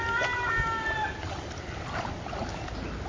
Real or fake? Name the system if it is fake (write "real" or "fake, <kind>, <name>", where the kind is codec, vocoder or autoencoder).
real